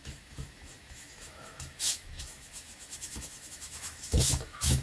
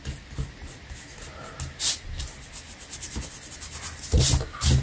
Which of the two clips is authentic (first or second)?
second